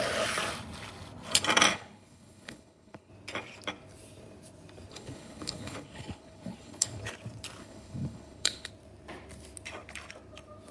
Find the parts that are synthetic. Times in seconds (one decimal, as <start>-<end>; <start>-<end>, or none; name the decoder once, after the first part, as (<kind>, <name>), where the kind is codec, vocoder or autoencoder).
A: 1.7-3.1 (codec, HILCodec); 4.9-7.0; 7.6-8.7